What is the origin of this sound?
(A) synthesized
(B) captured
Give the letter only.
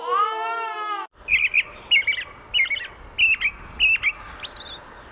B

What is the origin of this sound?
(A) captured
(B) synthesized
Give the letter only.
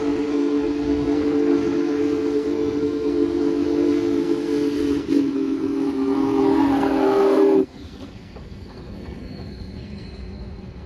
B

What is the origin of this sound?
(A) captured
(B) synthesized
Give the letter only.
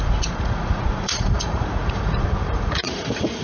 B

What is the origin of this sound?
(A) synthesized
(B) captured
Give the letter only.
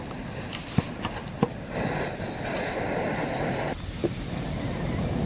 B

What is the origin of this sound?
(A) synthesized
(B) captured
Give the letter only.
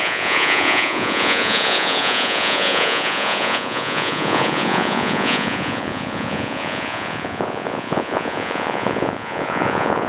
A